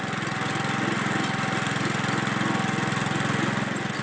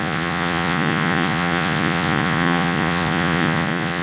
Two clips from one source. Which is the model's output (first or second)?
second